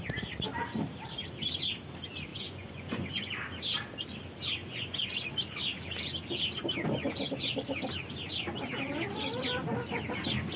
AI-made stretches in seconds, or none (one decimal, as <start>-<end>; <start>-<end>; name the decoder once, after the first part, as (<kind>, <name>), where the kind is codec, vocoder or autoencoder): 2.3-3.3 (vocoder, Vocos); 4.6-5.3